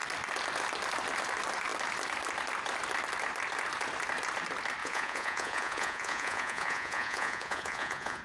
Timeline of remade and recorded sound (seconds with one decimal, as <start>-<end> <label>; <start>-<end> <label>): 0.0-4.8 recorded; 4.8-8.2 remade